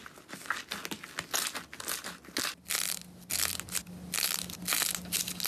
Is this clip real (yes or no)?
yes